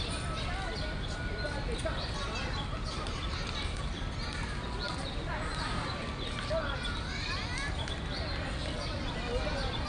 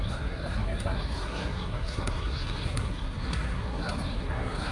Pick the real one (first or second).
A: first